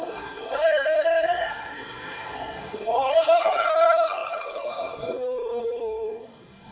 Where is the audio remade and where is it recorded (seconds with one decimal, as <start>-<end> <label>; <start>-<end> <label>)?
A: 0.0-6.7 remade